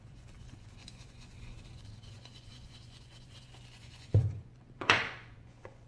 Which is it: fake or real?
fake